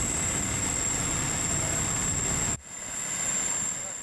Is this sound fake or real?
real